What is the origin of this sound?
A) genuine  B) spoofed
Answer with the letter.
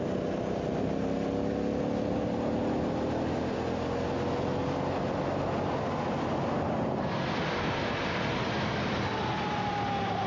A